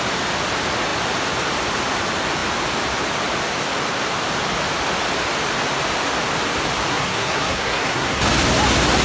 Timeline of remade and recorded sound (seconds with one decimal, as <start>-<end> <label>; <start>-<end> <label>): 0.0-6.9 recorded; 6.9-8.2 remade; 8.2-9.0 recorded